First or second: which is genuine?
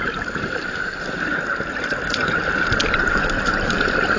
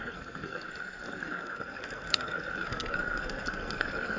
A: first